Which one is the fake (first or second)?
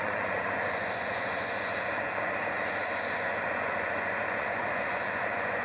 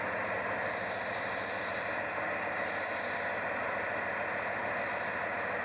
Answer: first